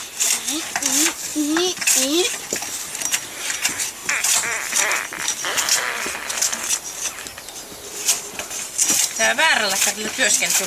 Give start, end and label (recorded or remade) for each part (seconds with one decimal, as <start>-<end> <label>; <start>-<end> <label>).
0.0-8.0 recorded; 8.0-9.2 remade; 9.2-10.7 recorded